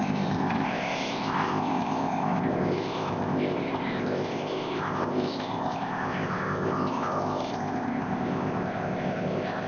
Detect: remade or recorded remade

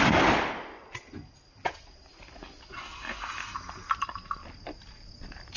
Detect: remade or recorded recorded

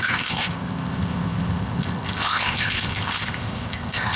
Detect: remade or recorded remade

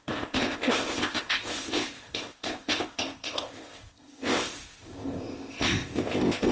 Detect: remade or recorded remade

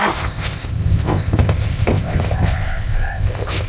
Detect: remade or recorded remade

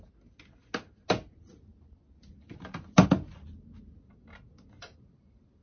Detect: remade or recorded recorded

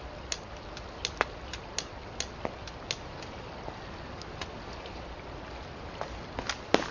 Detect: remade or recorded recorded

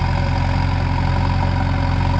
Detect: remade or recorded recorded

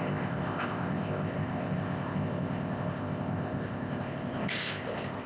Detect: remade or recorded remade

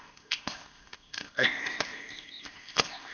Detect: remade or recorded remade